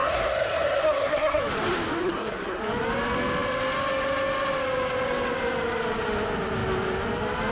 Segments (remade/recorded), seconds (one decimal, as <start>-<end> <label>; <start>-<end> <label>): 0.0-1.4 remade; 1.4-2.0 recorded; 2.0-2.6 remade; 2.6-7.5 recorded